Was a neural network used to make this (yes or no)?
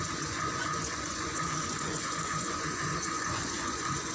yes